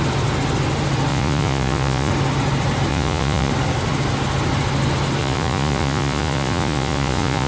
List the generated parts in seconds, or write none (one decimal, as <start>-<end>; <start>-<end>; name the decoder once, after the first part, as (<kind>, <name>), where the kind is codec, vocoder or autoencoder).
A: 1.1-2.1 (vocoder, Vocos); 2.9-3.5; 5.2-7.5